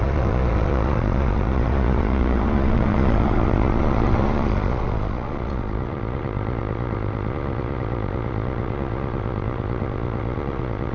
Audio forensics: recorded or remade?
remade